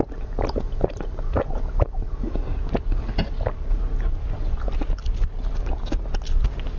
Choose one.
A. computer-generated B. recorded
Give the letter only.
B